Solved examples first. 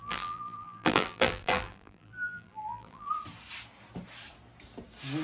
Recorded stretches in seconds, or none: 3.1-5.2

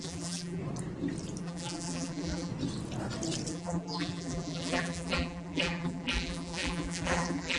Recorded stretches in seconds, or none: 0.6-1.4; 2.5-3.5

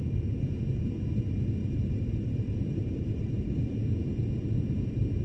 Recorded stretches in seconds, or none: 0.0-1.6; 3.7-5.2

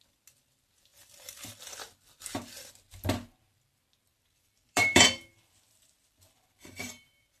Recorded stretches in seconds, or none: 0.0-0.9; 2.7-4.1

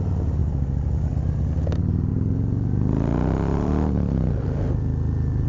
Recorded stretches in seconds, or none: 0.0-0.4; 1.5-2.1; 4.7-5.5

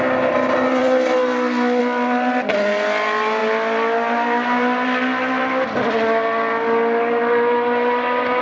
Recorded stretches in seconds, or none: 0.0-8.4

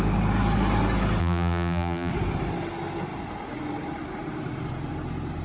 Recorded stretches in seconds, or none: 0.0-1.2; 2.1-5.4